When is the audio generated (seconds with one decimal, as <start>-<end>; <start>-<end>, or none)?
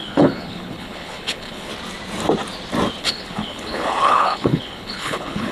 0.0-1.7; 3.0-5.5